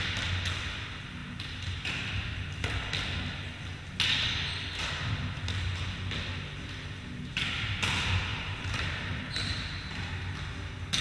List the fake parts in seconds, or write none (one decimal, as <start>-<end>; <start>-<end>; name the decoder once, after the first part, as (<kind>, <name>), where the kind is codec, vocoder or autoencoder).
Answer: 1.2-2.1 (vocoder, BigVGAN v2); 8.3-10.1